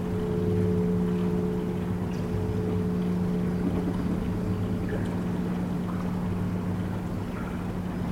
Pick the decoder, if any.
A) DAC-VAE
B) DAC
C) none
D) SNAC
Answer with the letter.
C